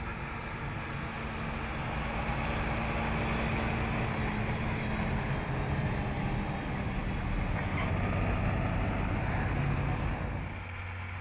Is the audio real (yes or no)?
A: yes